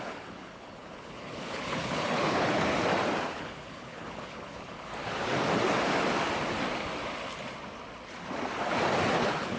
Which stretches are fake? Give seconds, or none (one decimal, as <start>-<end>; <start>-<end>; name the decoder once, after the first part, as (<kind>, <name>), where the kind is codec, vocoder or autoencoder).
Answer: 0.0-2.7 (codec, HILCodec); 3.2-4.9; 9.1-9.6